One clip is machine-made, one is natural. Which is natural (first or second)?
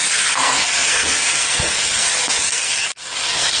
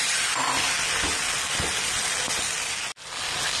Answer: second